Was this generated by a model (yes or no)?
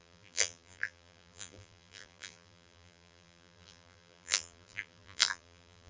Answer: yes